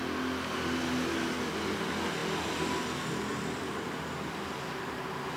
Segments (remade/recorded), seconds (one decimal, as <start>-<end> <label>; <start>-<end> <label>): 0.0-2.2 recorded; 2.2-2.8 remade; 2.8-3.3 recorded; 3.3-5.4 remade